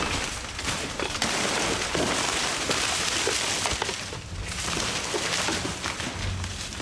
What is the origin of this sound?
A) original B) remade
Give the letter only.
A